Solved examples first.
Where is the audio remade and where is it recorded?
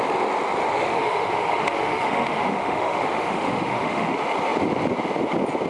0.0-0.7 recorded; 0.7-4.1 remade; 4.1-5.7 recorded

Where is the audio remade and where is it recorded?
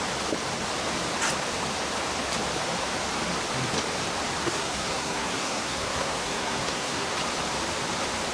0.0-4.4 recorded; 4.4-7.1 remade; 7.1-8.3 recorded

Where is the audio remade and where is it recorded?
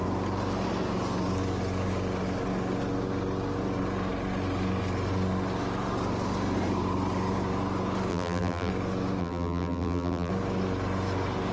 0.0-8.1 recorded; 8.1-8.7 remade; 8.7-9.2 recorded; 9.2-10.3 remade; 10.3-11.5 recorded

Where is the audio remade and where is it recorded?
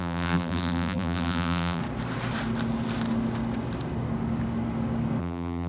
0.0-1.8 remade; 1.8-5.2 recorded; 5.2-5.7 remade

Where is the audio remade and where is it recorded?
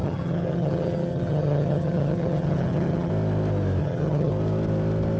0.0-3.1 remade; 3.1-3.8 recorded; 3.8-4.3 remade; 4.3-5.2 recorded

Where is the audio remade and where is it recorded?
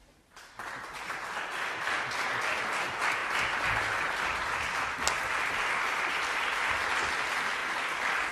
0.0-3.2 recorded; 3.2-5.5 remade; 5.5-7.6 recorded; 7.6-8.3 remade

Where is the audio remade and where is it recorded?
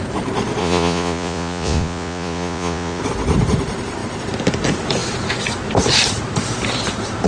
0.0-0.6 recorded; 0.6-3.0 remade; 3.0-7.3 recorded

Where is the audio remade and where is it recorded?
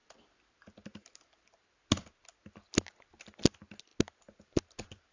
0.0-5.1 recorded